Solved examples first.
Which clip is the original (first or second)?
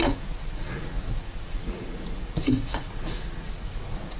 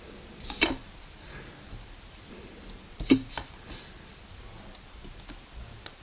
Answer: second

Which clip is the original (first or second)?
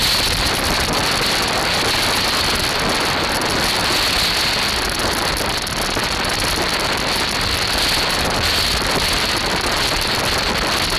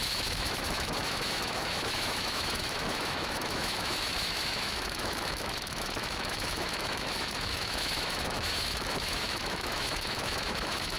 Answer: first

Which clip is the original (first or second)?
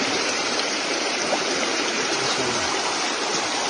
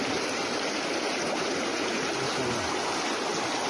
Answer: second